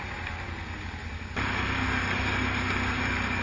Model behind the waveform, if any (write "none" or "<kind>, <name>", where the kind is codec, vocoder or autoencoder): none